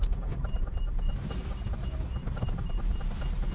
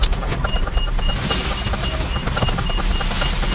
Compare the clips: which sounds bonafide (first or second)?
second